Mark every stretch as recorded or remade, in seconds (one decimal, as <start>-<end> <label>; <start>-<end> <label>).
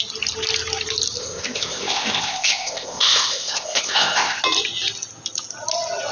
0.0-1.2 recorded; 1.2-4.4 remade; 4.4-6.1 recorded